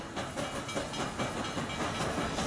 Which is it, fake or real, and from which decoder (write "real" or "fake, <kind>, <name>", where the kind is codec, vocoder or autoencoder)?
real